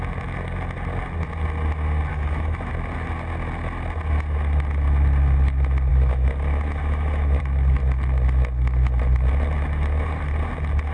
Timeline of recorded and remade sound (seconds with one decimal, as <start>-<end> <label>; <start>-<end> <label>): 0.0-2.1 recorded; 2.1-2.7 remade; 2.7-5.9 recorded; 5.9-7.4 remade; 7.4-10.9 recorded